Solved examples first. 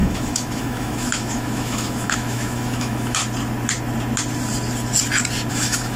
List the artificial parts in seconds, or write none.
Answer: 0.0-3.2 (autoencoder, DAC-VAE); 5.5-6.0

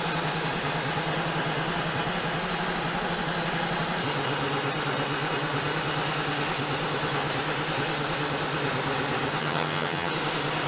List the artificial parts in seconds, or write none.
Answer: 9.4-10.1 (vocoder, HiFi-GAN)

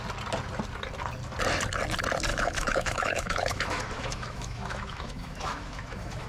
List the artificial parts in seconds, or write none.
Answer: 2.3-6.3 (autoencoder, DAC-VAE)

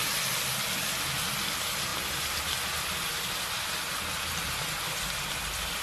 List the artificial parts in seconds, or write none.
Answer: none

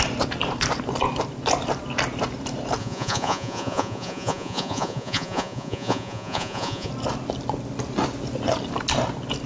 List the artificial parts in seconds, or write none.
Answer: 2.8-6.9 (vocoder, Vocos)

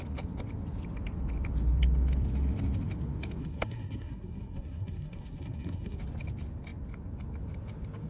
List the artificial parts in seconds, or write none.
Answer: 3.4-6.0 (codec, SNAC)

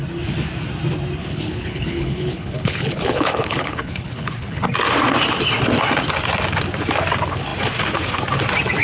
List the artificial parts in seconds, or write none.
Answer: 1.2-4.6 (codec, HILCodec)

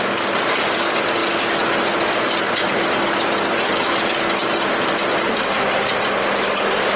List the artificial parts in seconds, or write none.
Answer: none